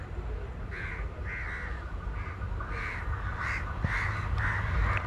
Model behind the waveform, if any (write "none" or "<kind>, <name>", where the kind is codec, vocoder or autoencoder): none